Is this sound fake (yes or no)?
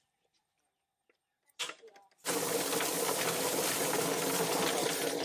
no